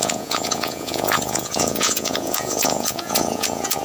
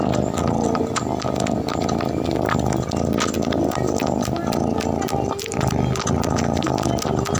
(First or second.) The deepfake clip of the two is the first